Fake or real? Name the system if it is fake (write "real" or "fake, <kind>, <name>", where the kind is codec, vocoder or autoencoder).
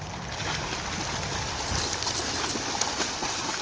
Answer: real